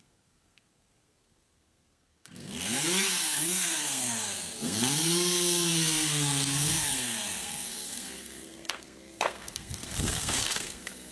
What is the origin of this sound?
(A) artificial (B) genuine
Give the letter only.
A